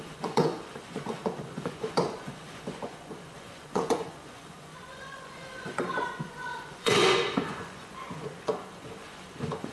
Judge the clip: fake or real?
fake